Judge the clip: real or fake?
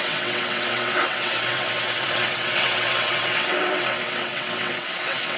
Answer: fake